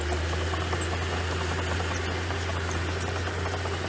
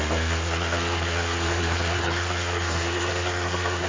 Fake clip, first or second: second